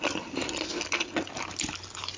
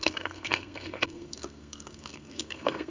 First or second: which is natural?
first